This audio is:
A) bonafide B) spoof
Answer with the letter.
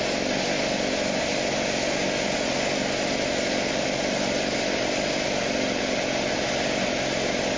A